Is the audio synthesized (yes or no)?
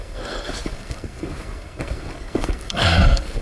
yes